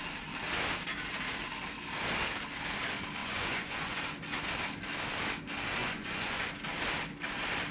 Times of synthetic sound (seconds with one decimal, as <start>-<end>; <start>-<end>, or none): 3.2-4.0; 5.8-6.4